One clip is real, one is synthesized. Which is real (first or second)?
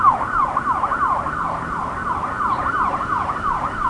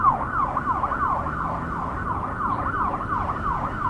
second